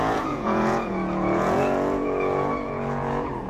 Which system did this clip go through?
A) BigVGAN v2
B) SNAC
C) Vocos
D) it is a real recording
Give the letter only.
C